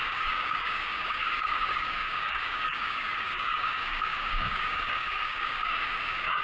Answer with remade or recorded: remade